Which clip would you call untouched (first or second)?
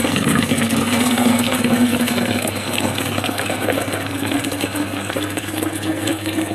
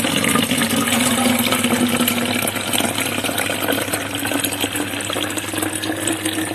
second